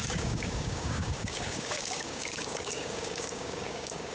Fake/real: fake